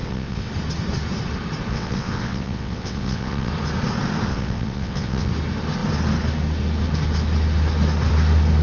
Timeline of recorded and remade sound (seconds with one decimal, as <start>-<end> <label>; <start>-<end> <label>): 0.0-0.5 remade; 0.5-1.7 recorded; 1.7-3.5 remade; 3.5-4.3 recorded; 4.3-5.3 remade; 5.3-8.6 recorded